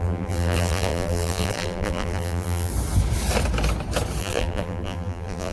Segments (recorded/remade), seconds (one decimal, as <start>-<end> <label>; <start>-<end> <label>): 0.0-2.7 remade; 2.7-4.2 recorded; 4.2-5.5 remade